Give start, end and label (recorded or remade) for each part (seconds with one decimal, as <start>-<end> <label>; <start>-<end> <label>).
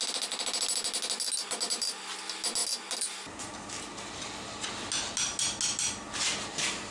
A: 0.0-6.9 recorded